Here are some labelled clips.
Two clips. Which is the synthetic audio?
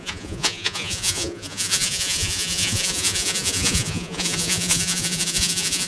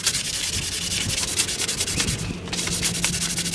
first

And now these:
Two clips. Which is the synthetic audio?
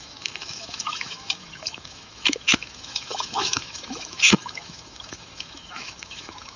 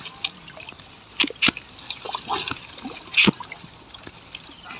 first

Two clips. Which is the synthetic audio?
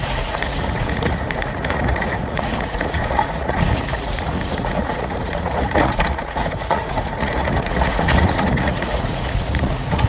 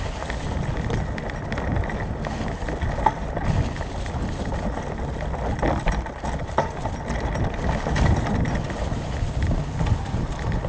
first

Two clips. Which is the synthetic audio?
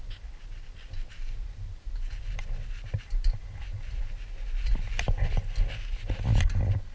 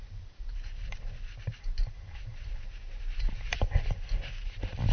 second